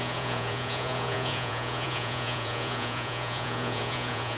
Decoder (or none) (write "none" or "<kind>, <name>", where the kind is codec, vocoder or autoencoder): vocoder, Vocos